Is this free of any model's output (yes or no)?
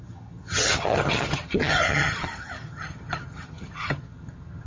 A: no